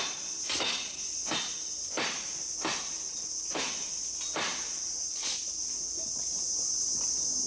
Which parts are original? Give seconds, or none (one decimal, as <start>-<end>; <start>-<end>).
0.0-2.9; 6.2-7.5